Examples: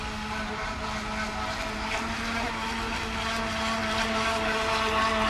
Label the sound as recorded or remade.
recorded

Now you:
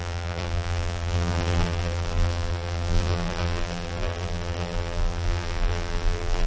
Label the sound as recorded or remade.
remade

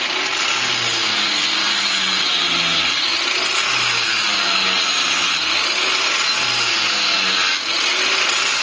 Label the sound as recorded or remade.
recorded